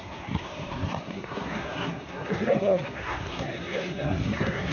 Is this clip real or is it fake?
fake